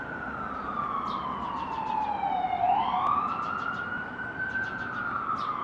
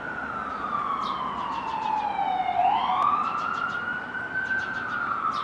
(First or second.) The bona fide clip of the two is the second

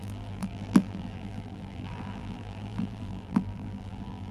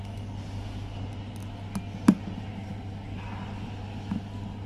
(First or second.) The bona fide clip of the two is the second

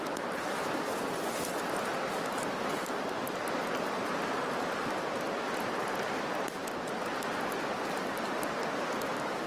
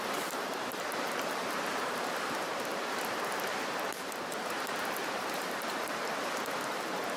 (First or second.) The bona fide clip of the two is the first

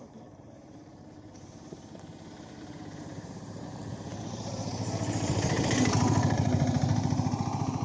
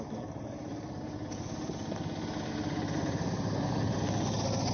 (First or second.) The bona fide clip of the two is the second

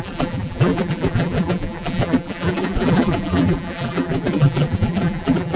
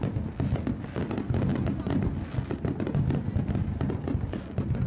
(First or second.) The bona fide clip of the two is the second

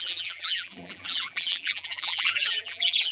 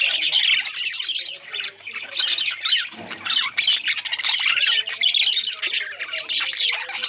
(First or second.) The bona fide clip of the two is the second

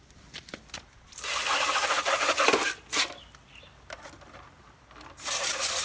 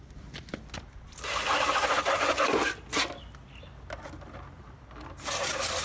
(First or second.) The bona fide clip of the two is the second